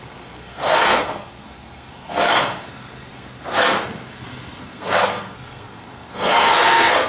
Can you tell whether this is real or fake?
fake